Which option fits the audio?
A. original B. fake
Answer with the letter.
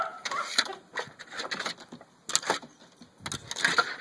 A